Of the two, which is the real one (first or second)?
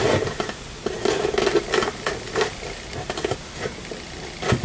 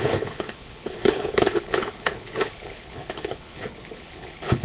first